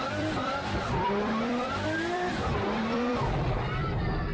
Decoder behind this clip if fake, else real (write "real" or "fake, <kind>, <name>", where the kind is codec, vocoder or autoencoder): fake, vocoder, BigVGAN v2